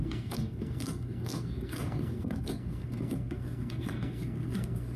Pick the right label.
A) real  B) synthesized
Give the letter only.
B